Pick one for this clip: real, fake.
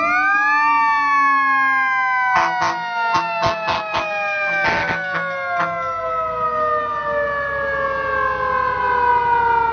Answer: real